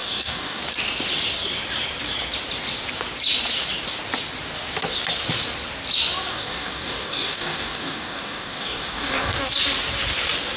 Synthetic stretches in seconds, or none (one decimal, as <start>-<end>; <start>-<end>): 0.0-0.6; 6.3-9.4